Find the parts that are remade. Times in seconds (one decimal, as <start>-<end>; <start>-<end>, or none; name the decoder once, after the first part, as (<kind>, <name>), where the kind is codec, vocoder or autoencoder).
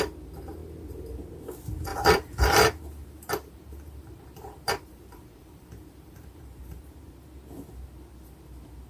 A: 1.9-6.8 (vocoder, BigVGAN v2)